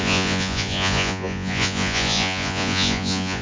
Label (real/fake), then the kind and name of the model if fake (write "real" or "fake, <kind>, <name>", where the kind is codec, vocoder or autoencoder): fake, vocoder, Vocos